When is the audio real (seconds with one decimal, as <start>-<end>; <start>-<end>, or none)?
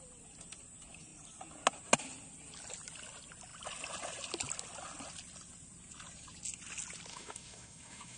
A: 0.0-7.1